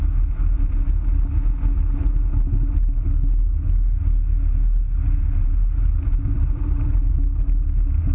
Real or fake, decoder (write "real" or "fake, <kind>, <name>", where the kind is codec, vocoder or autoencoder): real